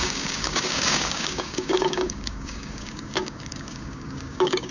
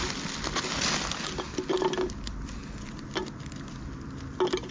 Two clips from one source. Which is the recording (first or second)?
second